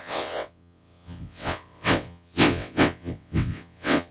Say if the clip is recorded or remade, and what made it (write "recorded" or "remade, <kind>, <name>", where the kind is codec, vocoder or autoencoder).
remade, vocoder, WaveNeXt